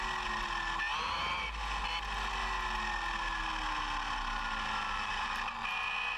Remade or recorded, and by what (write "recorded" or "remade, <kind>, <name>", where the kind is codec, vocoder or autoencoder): recorded